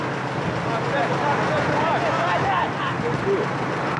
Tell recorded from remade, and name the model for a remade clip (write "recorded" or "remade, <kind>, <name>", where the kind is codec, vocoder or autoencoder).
recorded